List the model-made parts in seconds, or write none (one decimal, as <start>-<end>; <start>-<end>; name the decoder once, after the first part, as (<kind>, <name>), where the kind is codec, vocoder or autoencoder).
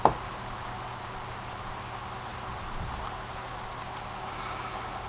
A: none